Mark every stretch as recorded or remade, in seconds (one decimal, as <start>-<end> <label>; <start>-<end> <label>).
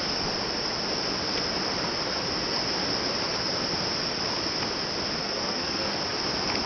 0.0-5.2 recorded; 5.2-6.0 remade; 6.0-6.7 recorded